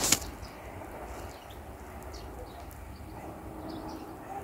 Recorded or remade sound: recorded